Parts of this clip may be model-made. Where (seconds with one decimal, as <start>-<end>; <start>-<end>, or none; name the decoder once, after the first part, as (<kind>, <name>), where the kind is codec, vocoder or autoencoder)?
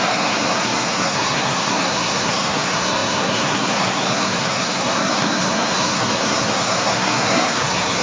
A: 0.0-8.0 (codec, SNAC)